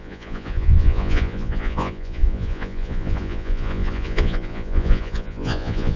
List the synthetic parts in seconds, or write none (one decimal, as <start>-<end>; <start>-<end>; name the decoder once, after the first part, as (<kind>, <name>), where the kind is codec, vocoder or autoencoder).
0.0-6.0 (vocoder, Vocos)